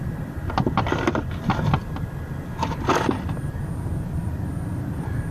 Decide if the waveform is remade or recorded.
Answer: remade